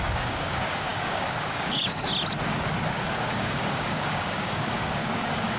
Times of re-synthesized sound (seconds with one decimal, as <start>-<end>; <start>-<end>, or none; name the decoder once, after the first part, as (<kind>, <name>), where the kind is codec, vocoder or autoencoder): 0.0-2.1 (codec, DAC); 2.9-5.6